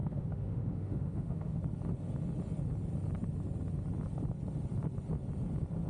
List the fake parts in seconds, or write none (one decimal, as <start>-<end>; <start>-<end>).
0.0-1.6